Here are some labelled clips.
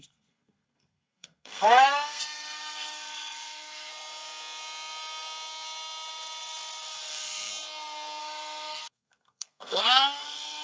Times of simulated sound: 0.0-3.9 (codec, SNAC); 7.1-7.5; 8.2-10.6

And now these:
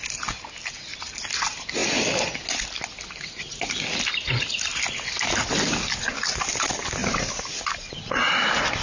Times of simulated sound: none

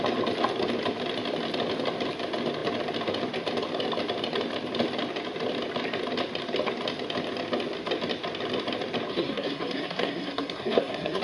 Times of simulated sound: 9.1-11.2 (codec, SNAC)